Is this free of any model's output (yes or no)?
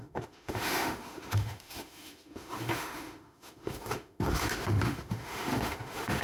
no